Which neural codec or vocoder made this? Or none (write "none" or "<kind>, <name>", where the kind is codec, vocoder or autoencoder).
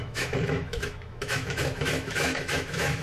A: autoencoder, DAC-VAE